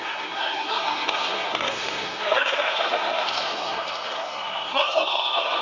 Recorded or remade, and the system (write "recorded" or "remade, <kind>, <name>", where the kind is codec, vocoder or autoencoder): remade, codec, SNAC